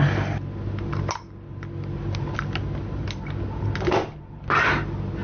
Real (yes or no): yes